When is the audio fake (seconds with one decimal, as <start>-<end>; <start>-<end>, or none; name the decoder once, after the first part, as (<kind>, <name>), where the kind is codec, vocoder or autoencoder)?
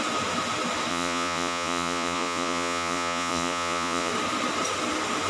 0.9-4.1 (vocoder, Vocos)